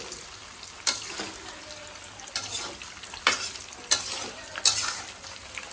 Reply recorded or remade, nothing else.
recorded